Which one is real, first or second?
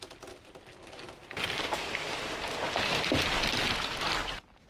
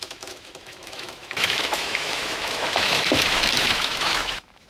first